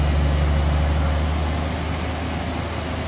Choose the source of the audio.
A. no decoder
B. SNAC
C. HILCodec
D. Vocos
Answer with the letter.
A